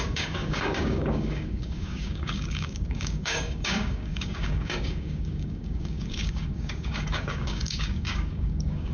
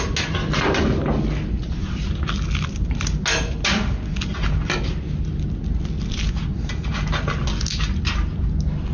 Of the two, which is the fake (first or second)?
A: first